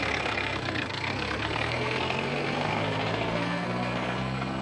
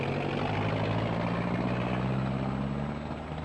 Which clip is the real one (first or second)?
second